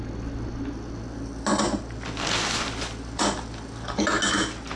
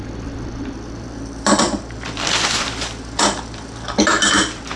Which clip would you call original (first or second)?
first